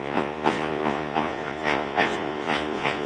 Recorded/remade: remade